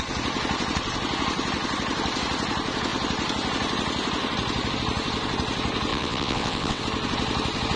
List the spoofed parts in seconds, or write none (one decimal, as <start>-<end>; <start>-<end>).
5.9-6.8